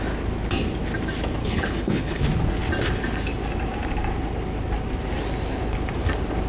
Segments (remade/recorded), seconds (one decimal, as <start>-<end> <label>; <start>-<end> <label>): 0.0-1.4 recorded; 1.4-2.2 remade; 2.2-6.5 recorded